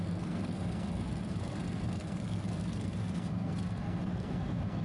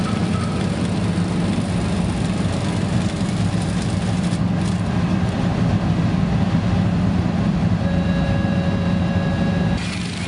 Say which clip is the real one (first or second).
second